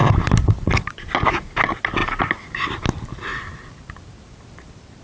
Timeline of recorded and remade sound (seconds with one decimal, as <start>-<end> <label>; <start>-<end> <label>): 0.0-5.0 recorded